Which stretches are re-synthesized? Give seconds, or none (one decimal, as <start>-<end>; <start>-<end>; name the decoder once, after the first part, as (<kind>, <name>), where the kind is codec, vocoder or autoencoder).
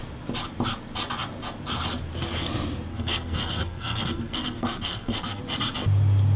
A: 2.9-5.4 (codec, SNAC)